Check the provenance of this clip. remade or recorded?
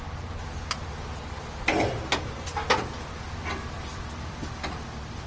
recorded